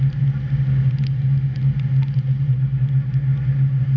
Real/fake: real